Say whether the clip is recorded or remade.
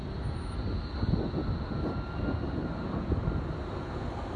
recorded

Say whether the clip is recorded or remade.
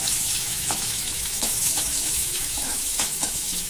remade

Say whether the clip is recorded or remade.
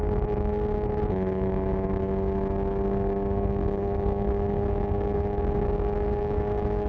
remade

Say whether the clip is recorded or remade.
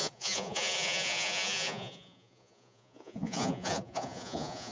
remade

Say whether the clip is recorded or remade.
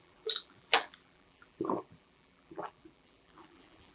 remade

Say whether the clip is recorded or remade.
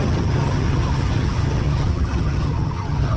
remade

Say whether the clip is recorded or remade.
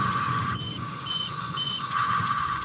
remade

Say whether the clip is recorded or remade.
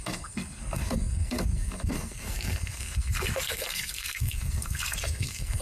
remade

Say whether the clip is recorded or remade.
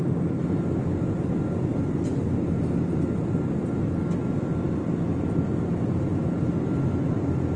recorded